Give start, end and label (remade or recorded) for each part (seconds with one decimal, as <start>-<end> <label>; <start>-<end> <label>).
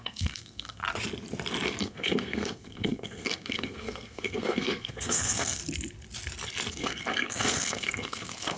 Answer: 0.0-0.8 remade; 0.8-1.8 recorded; 1.8-5.6 remade; 5.6-6.7 recorded; 6.7-8.6 remade